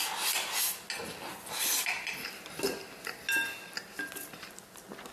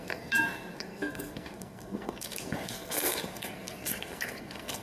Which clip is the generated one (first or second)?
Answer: second